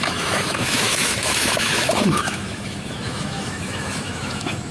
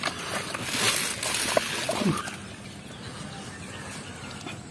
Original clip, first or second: second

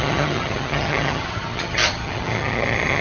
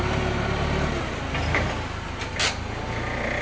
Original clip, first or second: second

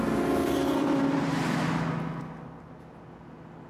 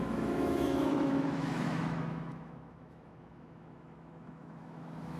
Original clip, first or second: first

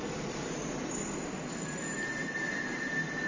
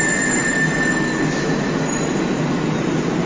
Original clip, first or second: second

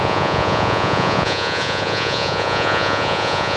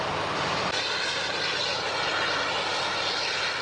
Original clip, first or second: second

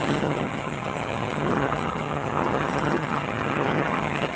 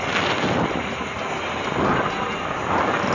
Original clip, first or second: second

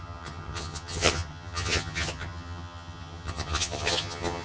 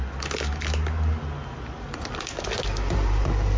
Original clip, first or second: second